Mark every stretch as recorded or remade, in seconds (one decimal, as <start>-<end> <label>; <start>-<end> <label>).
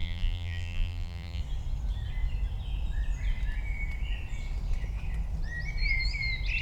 0.0-1.4 remade; 1.4-6.6 recorded